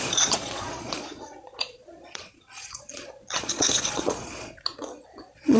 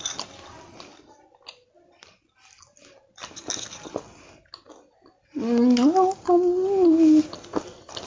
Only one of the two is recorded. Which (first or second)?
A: second